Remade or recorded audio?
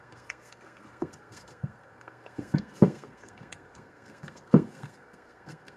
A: remade